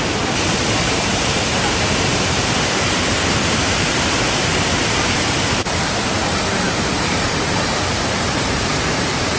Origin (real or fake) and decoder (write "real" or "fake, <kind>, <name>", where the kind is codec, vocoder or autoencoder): fake, vocoder, BigVGAN v2